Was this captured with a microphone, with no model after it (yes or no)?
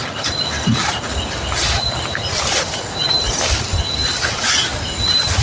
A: yes